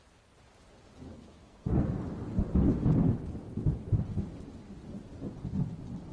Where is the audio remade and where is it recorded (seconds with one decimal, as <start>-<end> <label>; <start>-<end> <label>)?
0.0-1.1 recorded; 1.1-2.0 remade; 2.0-6.1 recorded